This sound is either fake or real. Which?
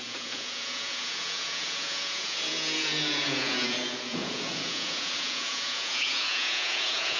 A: fake